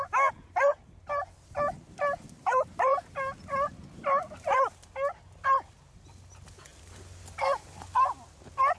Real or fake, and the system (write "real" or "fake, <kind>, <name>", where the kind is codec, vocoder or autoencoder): real